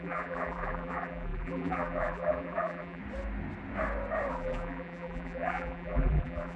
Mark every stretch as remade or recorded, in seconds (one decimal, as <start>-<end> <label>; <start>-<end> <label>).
0.0-3.0 remade; 3.0-4.3 recorded; 4.3-6.6 remade